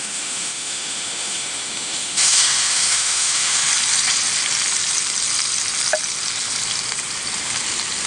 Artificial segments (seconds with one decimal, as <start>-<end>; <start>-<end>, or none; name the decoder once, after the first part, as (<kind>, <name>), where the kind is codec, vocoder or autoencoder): 0.0-3.7 (autoencoder, DAC-VAE)